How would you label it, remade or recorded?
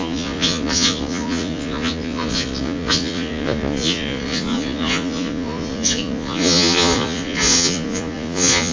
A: remade